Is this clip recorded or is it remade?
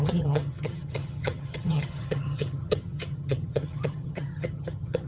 remade